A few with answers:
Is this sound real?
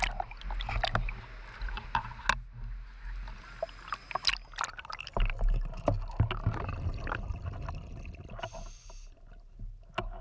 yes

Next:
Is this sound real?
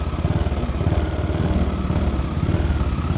yes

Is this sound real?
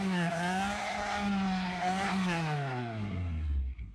no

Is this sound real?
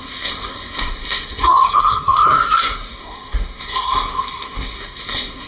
no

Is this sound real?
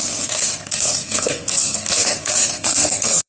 no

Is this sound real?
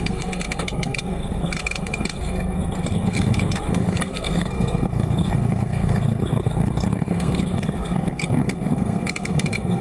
no